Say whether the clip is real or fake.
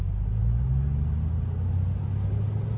real